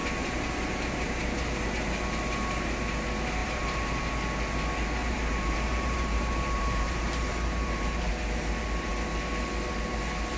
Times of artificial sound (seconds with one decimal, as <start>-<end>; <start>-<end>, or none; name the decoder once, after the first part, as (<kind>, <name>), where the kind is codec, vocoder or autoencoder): 0.0-1.5 (vocoder, BigVGAN v2); 3.4-4.1; 5.0-8.1